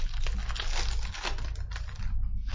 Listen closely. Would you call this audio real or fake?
real